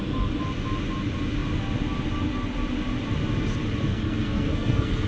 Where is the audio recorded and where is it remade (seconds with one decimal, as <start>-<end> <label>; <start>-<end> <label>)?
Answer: 0.0-3.9 recorded; 3.9-5.1 remade